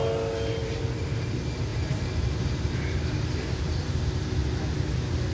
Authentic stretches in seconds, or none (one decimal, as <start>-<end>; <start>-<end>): 0.0-0.6; 1.2-1.7; 3.7-5.3